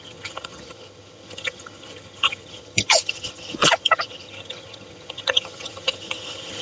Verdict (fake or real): fake